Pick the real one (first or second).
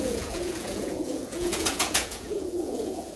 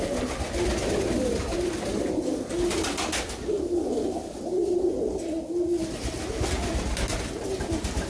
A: second